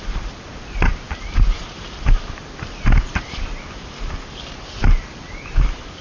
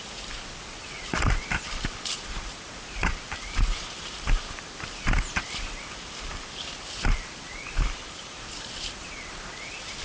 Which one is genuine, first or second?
first